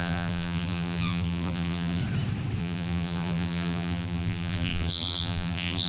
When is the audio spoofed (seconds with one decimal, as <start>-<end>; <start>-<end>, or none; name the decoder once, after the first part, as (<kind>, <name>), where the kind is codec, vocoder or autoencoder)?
0.0-2.0 (vocoder, BigVGAN v2); 2.6-5.9